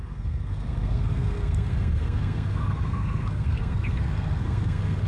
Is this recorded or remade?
remade